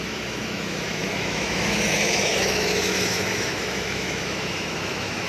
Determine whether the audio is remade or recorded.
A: remade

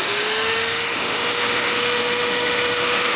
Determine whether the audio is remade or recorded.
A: remade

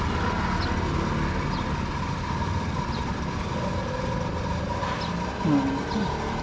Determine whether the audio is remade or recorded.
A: recorded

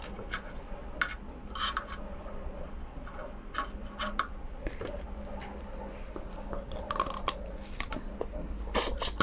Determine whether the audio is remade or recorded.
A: recorded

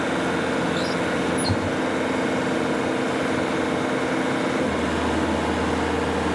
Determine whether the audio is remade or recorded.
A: recorded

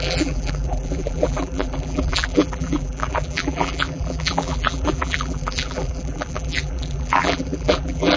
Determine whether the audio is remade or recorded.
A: remade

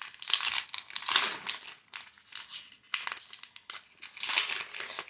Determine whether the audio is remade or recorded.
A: recorded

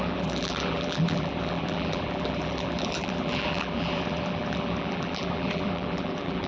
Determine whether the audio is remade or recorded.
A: remade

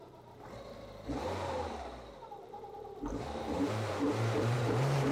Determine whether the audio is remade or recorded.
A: remade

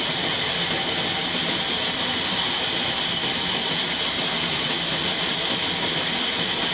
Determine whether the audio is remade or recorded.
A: recorded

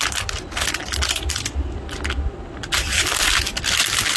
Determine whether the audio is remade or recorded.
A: recorded